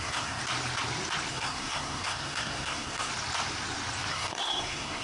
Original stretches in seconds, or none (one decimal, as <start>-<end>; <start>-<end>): 0.4-1.3; 3.1-4.1